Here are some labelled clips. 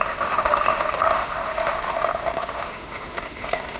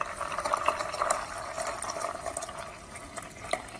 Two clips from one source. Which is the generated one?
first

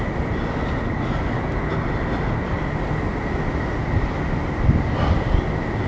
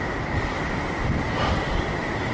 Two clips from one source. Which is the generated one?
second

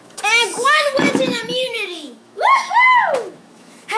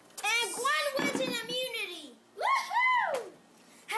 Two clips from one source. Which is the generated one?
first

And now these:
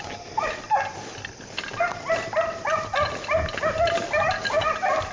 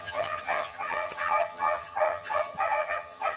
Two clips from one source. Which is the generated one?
second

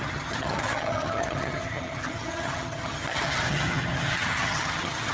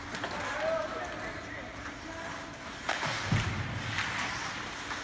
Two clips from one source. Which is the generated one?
first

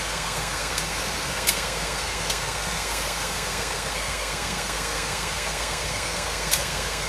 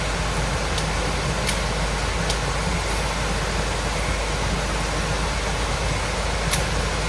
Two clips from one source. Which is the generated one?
first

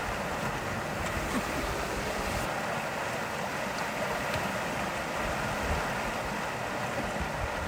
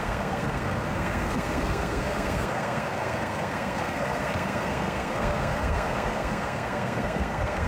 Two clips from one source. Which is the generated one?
second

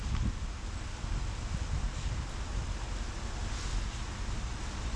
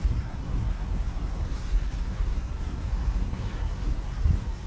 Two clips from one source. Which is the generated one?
second